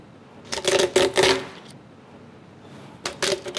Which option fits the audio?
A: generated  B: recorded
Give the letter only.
B